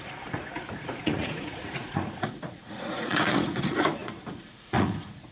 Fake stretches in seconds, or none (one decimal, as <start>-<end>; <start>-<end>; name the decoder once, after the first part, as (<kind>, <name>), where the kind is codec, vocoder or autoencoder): 0.0-5.3 (vocoder, Vocos)